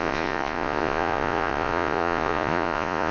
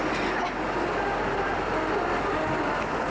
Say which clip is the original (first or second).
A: second